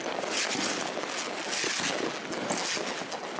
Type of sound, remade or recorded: recorded